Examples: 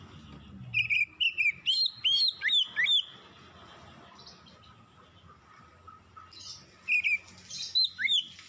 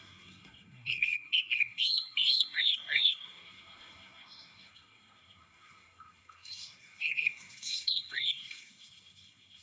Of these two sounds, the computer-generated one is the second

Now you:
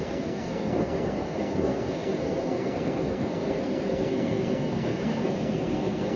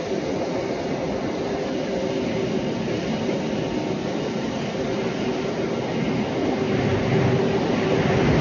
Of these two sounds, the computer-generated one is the first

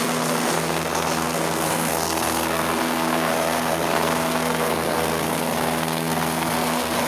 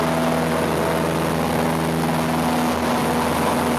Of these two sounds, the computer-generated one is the first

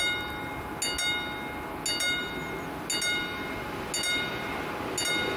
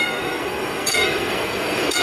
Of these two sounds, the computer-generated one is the second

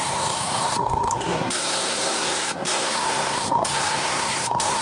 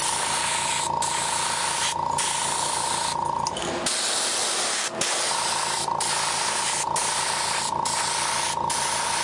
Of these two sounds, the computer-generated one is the first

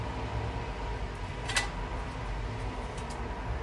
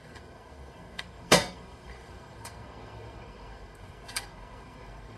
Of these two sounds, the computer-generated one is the second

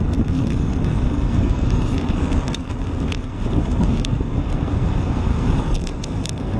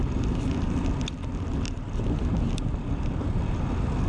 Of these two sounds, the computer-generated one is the first